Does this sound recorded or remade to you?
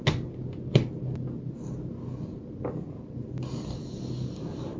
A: recorded